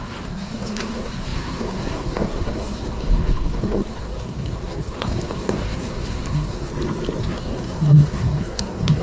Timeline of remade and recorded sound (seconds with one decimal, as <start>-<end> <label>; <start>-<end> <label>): 0.0-6.7 remade; 6.7-7.2 recorded; 7.2-9.0 remade